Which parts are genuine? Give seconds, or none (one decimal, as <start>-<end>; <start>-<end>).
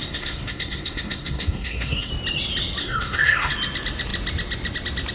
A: 2.1-2.8; 3.5-5.1